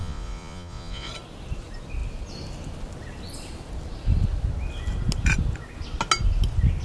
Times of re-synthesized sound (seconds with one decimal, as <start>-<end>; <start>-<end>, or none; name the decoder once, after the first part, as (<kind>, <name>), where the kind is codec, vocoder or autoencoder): 0.0-1.1 (vocoder, Vocos)